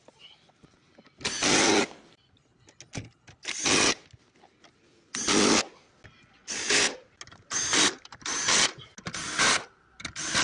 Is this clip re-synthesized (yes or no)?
no